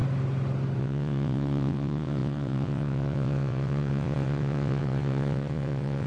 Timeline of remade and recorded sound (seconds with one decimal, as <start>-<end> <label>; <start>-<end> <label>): 0.0-0.8 recorded; 0.8-6.1 remade